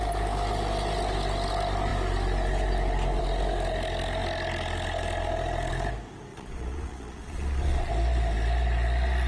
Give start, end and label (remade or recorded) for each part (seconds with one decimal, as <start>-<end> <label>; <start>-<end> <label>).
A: 0.0-6.3 recorded; 6.3-7.9 remade; 7.9-9.3 recorded